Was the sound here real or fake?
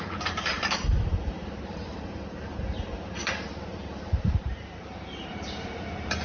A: fake